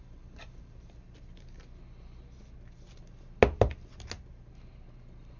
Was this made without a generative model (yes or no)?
yes